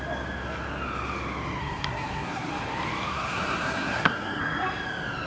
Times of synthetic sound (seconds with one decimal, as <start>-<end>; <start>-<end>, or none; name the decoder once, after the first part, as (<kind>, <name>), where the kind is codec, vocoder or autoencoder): 1.6-2.5 (codec, SNAC); 3.1-4.4